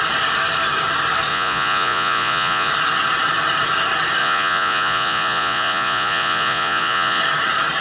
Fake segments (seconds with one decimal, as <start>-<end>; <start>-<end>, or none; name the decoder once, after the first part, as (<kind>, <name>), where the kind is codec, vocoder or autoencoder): 1.3-2.7 (vocoder, Vocos); 4.2-7.2